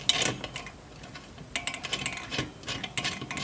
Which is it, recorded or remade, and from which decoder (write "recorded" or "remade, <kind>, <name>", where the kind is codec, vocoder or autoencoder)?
recorded